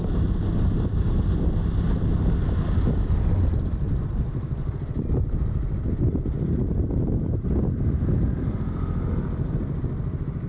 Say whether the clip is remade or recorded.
recorded